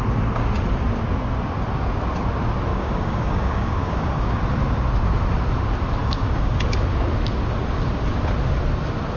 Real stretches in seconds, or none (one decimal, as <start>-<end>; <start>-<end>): 0.0-2.7; 4.4-6.0; 6.6-9.2